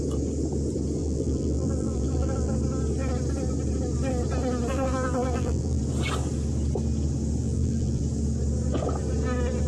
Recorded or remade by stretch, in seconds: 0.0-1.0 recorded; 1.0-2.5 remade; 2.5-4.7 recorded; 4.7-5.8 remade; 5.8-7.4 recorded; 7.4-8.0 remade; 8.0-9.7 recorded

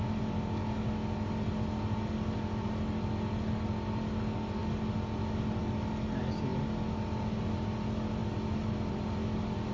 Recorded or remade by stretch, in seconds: 0.0-9.7 recorded